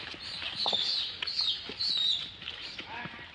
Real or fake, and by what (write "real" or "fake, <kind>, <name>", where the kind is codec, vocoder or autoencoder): real